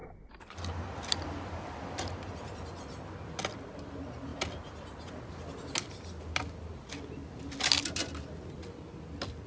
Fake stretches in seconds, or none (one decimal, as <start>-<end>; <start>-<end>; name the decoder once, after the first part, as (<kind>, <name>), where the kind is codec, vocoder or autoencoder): 0.0-1.4 (vocoder, BigVGAN v2); 7.2-8.1